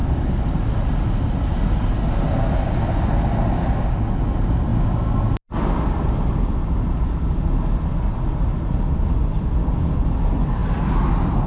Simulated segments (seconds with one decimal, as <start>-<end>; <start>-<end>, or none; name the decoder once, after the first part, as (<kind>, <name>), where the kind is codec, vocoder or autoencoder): none